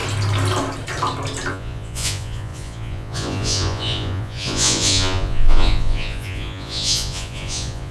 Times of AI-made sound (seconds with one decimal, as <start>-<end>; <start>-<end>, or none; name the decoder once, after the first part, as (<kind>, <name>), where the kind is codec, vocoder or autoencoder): 1.5-7.9 (vocoder, Vocos)